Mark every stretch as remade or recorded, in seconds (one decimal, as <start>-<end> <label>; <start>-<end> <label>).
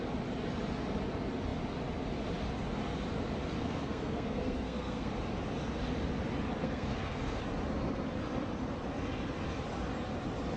0.0-3.6 recorded; 3.6-5.1 remade; 5.1-6.6 recorded; 6.6-7.4 remade; 7.4-10.6 recorded